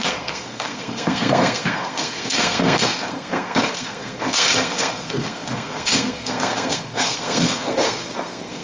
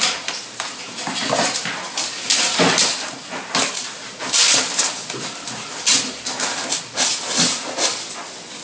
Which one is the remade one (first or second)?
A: first